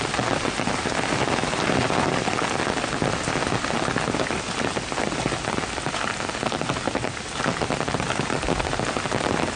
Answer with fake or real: real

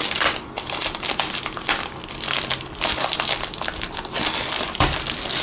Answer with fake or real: real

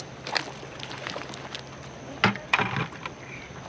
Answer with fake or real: real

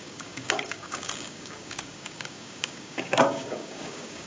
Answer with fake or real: fake